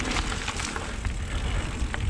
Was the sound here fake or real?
real